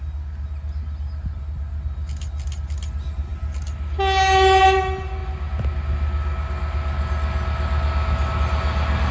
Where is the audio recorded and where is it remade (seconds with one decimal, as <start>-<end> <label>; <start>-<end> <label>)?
0.0-9.1 recorded